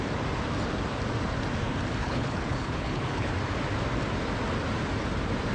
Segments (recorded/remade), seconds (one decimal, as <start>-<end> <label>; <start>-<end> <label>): 0.0-2.0 recorded; 2.0-3.3 remade; 3.3-5.5 recorded